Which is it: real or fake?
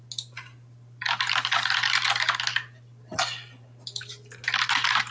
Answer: real